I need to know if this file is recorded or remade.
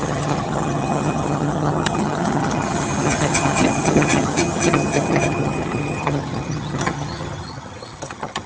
remade